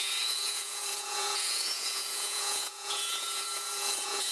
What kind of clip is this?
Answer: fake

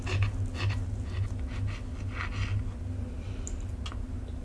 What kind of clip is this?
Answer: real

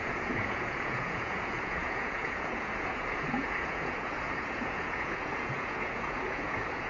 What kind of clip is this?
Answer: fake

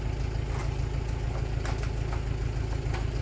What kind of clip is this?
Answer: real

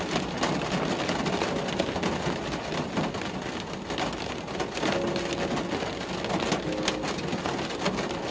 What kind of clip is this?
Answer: real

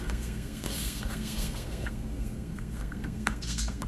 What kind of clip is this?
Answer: fake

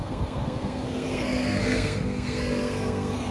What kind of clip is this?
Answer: fake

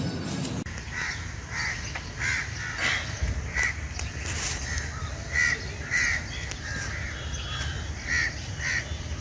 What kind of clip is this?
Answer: real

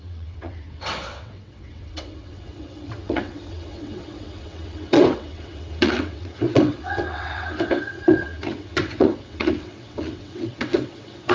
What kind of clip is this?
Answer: fake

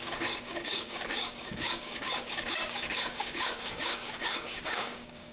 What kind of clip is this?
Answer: fake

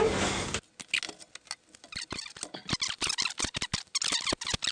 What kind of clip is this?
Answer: real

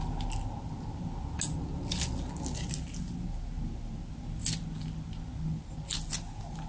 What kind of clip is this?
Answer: real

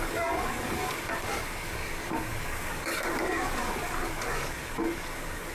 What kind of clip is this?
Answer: fake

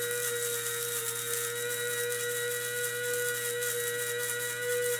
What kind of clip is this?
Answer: real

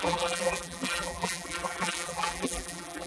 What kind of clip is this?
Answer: fake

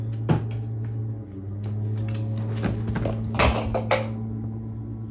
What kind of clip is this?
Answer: real